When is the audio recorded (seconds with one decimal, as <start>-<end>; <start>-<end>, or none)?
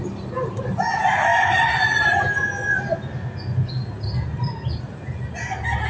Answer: 0.0-5.9